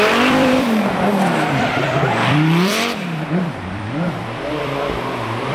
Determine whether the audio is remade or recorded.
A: remade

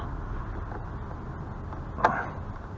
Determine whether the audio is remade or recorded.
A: recorded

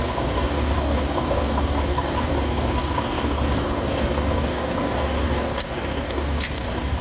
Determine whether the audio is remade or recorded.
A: remade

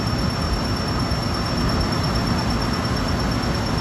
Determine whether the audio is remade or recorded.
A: recorded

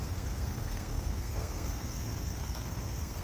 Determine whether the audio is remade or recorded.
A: remade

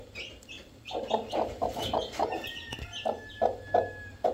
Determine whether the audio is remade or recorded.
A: recorded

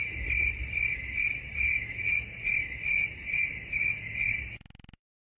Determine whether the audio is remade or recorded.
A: recorded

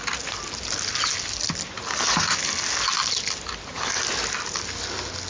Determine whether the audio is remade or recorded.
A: recorded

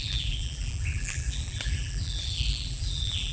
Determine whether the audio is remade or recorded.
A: remade